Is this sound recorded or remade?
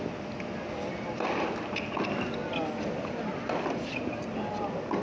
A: recorded